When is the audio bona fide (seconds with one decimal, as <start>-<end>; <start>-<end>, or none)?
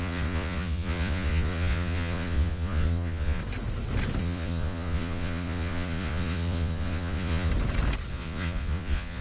3.4-4.2; 7.5-8.1